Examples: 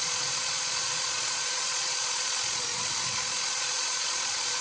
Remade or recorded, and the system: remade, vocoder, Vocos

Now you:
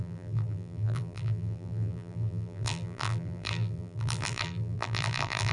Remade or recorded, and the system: remade, vocoder, BigVGAN v2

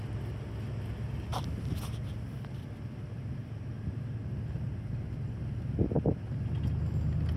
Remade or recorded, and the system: recorded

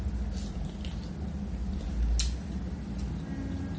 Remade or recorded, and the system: recorded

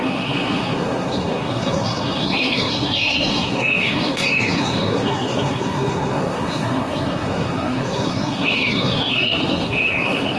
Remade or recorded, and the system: remade, codec, SNAC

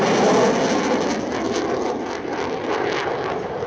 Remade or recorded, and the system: recorded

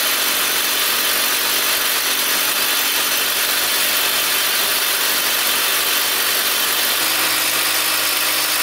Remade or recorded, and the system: recorded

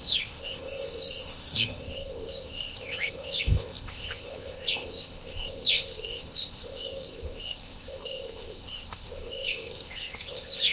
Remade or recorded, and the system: remade, codec, ZipCodec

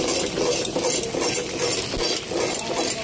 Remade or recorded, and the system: recorded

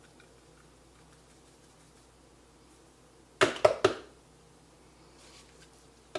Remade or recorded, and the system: recorded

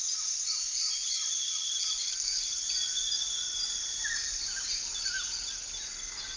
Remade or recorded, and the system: recorded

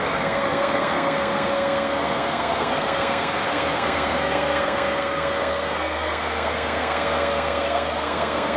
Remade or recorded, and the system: remade, codec, SNAC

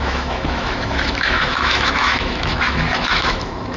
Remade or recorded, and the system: remade, autoencoder, DAC-VAE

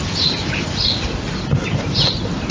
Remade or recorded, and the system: recorded